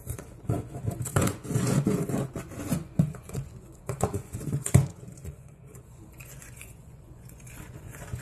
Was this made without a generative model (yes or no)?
no